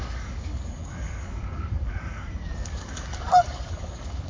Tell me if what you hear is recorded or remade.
remade